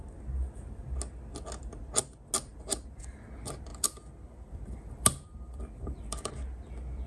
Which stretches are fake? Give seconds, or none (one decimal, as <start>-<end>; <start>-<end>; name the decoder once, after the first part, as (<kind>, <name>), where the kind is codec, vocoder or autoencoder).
2.5-3.0 (vocoder, BigVGAN v2); 3.7-6.3